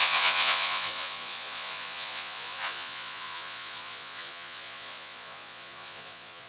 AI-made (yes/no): yes